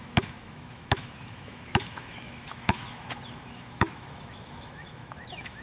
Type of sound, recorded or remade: remade